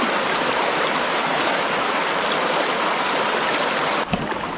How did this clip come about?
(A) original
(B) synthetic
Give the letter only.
A